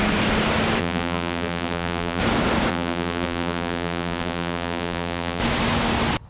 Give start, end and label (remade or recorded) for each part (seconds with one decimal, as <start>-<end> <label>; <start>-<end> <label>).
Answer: 0.0-0.8 recorded; 0.8-2.2 remade; 2.2-2.7 recorded; 2.7-5.4 remade; 5.4-6.3 recorded